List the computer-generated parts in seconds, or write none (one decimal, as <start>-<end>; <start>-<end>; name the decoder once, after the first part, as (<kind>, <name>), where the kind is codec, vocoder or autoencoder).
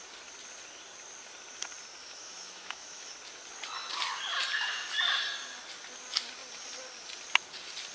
2.0-3.1 (autoencoder, DAC-VAE)